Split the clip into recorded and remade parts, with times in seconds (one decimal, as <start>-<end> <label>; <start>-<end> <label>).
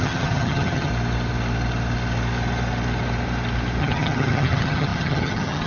0.0-0.9 remade; 0.9-3.8 recorded; 3.8-5.7 remade